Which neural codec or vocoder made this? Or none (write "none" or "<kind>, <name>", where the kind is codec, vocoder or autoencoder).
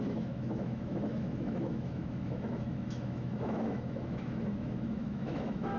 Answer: autoencoder, DAC-VAE